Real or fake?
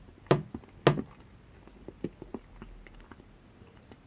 real